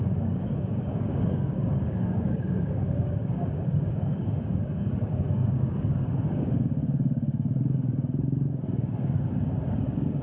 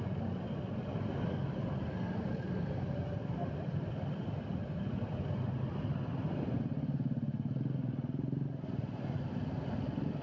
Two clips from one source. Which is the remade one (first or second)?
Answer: first